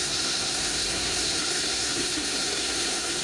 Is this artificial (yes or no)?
yes